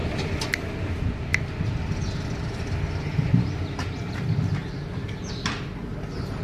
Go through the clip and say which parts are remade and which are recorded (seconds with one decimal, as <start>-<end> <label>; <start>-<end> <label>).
0.0-0.9 remade; 0.9-1.3 recorded; 1.3-2.4 remade; 2.4-4.6 recorded; 4.6-5.3 remade; 5.3-6.4 recorded